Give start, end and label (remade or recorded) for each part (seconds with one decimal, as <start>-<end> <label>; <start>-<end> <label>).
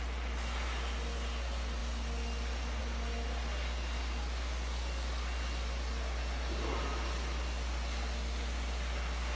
0.0-9.4 recorded